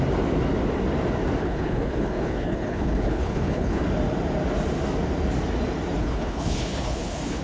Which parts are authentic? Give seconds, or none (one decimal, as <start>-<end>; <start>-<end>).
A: 0.0-1.4; 3.8-6.0